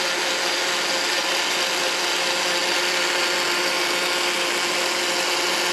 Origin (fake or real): real